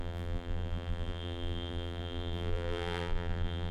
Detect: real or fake fake